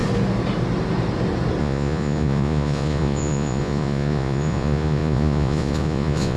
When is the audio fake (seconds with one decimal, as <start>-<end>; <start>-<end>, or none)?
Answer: 1.6-6.4